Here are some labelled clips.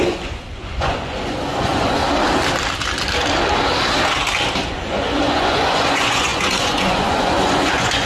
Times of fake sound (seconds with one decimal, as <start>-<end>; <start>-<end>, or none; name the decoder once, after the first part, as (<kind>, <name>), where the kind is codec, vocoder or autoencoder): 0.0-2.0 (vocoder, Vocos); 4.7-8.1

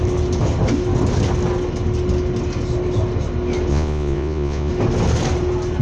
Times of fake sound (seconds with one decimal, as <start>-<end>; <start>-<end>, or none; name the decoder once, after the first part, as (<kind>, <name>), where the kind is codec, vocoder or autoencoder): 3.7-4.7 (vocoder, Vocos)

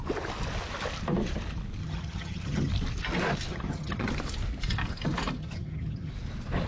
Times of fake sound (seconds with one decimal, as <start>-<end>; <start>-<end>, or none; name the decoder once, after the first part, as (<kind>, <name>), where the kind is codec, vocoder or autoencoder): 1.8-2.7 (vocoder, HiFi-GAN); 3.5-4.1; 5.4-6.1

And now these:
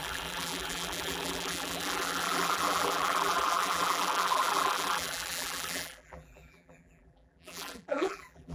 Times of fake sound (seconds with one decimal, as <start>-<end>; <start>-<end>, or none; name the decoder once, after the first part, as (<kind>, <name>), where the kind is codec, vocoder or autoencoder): 0.0-8.5 (vocoder, BigVGAN v2)

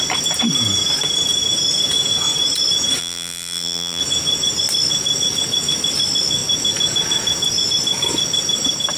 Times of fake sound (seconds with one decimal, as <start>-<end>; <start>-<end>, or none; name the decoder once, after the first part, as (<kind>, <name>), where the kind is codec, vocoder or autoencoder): 3.0-4.0 (vocoder, BigVGAN v2)